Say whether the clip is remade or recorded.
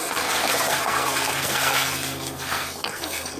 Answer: remade